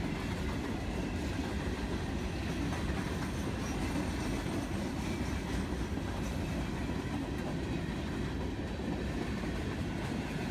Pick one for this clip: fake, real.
real